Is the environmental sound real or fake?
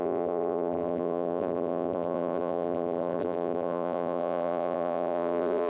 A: fake